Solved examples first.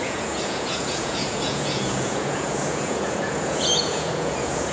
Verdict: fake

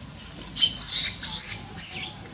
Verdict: real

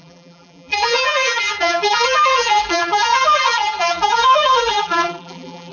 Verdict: fake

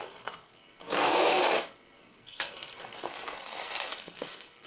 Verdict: fake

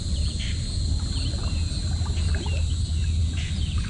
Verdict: real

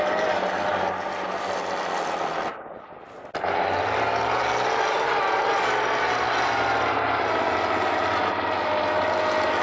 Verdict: real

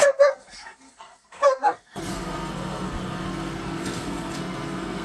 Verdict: fake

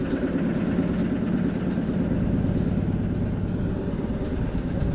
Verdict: real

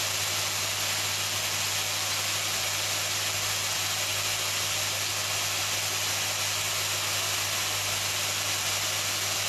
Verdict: real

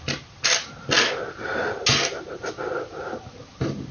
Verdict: real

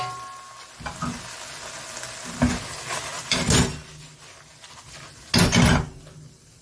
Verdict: real